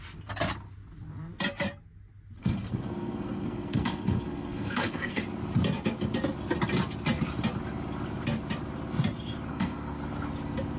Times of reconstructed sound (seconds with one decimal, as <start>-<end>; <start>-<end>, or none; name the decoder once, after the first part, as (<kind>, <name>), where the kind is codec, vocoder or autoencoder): 2.4-5.2 (codec, SNAC); 9.5-10.0